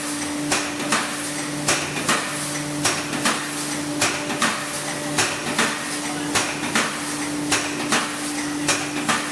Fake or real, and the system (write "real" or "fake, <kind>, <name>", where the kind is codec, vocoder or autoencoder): real